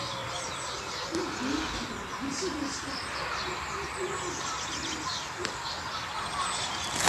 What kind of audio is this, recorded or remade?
remade